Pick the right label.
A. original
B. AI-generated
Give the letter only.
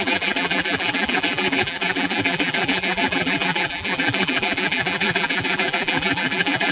B